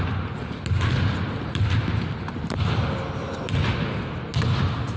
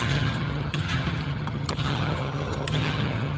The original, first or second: first